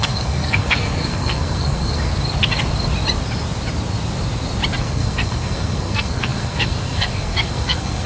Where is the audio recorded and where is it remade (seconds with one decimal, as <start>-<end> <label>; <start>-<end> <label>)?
0.0-2.1 remade; 2.1-4.8 recorded; 4.8-8.1 remade